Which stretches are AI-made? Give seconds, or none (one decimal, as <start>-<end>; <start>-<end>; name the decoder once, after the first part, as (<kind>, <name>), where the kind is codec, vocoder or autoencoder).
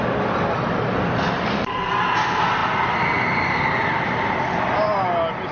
none